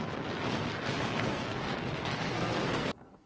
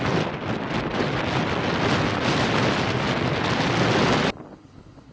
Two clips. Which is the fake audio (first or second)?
first